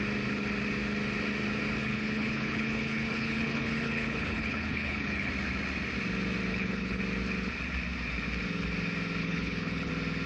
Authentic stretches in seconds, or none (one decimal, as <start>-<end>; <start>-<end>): 0.0-1.8; 5.3-6.5; 7.0-9.2; 9.9-10.3